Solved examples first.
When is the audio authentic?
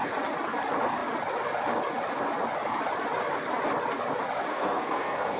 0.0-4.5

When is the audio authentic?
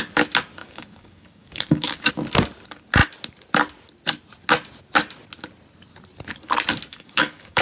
0.0-0.6; 2.1-6.9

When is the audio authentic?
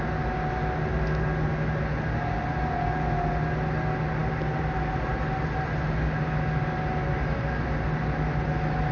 0.0-8.9